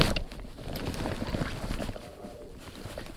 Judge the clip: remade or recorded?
recorded